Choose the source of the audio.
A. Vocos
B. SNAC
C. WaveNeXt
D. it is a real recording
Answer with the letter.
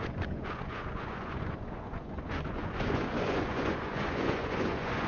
A